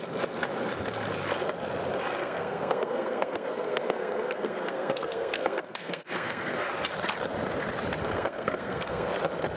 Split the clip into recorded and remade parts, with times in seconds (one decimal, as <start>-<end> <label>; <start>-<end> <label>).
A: 0.0-2.2 recorded; 2.2-6.7 remade; 6.7-8.0 recorded; 8.0-9.1 remade; 9.1-9.6 recorded